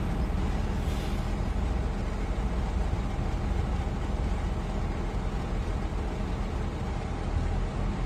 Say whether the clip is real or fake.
real